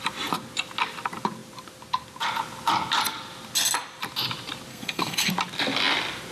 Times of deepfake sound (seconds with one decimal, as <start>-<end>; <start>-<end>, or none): 4.7-5.3